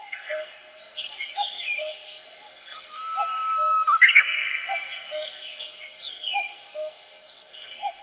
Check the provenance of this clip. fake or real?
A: fake